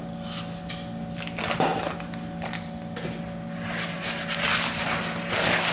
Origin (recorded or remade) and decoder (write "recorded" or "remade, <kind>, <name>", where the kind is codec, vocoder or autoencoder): recorded